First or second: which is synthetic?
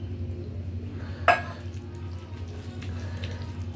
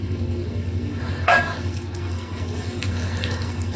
second